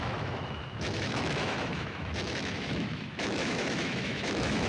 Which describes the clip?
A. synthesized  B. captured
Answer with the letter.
A